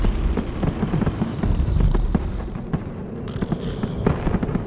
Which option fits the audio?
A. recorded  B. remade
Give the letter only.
A